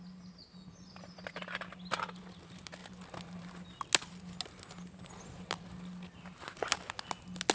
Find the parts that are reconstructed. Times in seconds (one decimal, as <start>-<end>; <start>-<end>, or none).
none